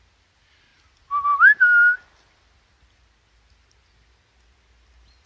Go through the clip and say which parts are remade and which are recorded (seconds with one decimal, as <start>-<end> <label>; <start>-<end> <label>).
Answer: 0.0-5.3 recorded